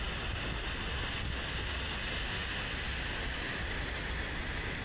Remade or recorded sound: recorded